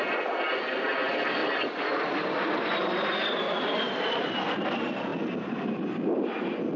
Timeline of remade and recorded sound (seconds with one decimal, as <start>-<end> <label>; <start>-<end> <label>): 0.0-6.8 recorded